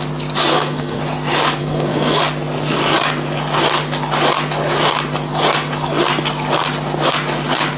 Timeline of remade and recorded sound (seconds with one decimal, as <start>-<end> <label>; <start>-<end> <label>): 0.0-0.5 recorded; 0.5-1.0 remade; 1.0-1.6 recorded; 1.6-2.2 remade; 2.2-7.8 recorded